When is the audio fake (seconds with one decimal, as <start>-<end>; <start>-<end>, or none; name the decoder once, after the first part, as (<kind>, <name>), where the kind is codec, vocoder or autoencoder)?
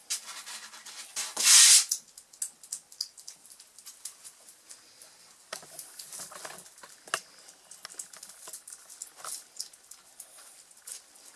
none